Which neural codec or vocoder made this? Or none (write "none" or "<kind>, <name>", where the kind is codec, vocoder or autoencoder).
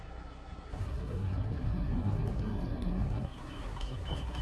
codec, SNAC